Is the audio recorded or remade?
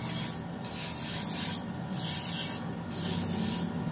recorded